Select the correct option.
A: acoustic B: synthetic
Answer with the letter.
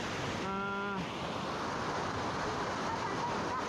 A